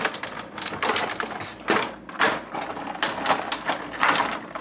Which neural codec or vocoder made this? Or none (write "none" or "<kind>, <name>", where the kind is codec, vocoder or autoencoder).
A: none